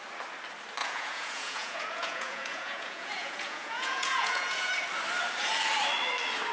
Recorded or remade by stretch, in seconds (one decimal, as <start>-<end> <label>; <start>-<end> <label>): 0.0-0.8 recorded; 0.8-4.7 remade; 4.7-6.5 recorded